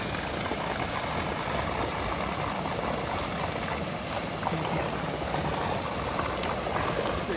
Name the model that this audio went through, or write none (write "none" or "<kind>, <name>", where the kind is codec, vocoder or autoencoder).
none